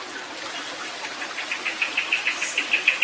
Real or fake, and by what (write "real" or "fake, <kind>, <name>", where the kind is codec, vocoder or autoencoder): real